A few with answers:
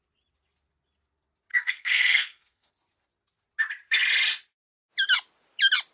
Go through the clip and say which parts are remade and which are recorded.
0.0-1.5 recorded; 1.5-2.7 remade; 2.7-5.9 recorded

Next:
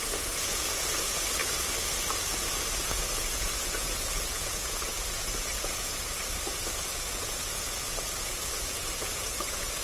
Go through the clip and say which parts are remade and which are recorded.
0.0-1.4 remade; 1.4-2.8 recorded; 2.8-9.8 remade